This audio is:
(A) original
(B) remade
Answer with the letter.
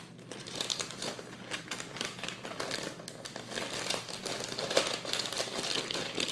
A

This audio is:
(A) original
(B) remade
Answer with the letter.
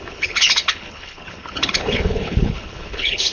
B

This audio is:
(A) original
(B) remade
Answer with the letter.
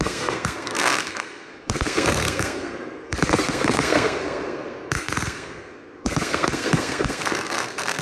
B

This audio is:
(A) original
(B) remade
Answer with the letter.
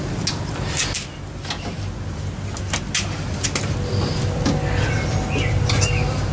A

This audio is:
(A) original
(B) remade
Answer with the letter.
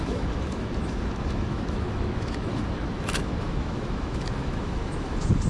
B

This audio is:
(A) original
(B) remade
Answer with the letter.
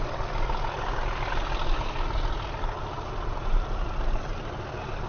A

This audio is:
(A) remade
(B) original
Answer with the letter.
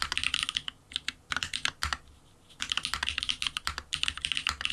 B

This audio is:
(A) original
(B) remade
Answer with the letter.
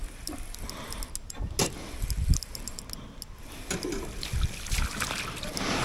A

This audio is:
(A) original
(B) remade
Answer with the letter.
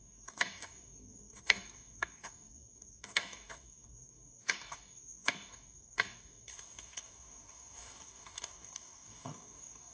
B